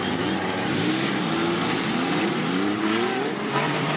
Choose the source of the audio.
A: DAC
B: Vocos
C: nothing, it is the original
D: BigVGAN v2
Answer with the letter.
C